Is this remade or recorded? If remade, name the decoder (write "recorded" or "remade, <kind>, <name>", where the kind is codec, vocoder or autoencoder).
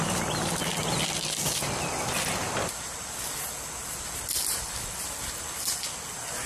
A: recorded